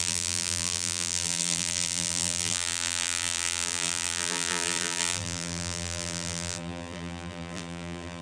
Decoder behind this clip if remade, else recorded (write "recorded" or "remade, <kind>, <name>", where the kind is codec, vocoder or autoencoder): remade, vocoder, BigVGAN v2